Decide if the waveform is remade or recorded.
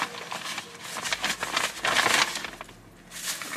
recorded